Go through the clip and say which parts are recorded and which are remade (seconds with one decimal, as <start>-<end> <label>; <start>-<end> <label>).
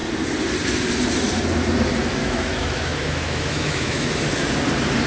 0.0-2.2 recorded; 2.2-4.2 remade; 4.2-5.1 recorded